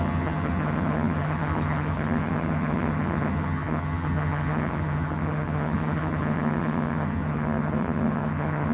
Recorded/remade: remade